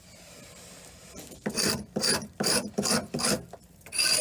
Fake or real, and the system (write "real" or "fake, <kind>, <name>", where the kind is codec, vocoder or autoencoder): real